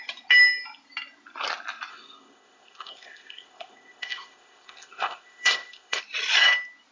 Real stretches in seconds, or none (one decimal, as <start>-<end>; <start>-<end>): 0.0-1.9; 6.0-6.9